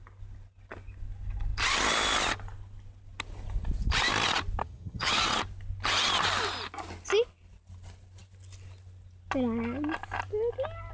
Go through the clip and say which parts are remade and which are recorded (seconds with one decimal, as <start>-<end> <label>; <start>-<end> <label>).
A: 0.0-4.6 recorded; 4.6-5.1 remade; 5.1-10.9 recorded